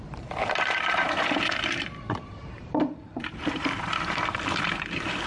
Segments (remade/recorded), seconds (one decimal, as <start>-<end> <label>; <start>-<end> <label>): 0.0-5.3 remade